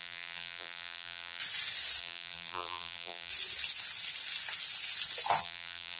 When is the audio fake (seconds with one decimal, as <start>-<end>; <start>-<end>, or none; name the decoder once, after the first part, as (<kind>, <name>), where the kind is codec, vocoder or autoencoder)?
0.0-1.4 (vocoder, BigVGAN v2); 2.0-3.3; 5.4-6.0